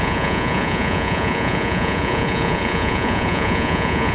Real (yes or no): no